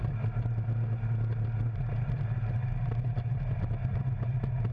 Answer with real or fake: real